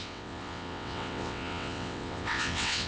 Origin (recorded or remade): remade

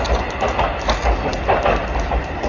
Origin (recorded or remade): recorded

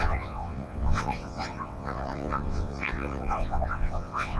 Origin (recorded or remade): remade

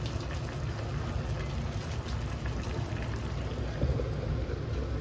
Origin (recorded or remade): recorded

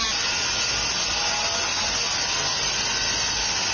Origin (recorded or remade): recorded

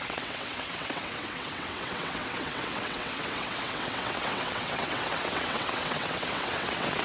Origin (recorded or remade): remade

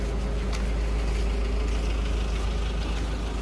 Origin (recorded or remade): recorded